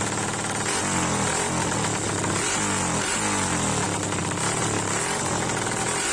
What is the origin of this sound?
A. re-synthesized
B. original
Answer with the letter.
B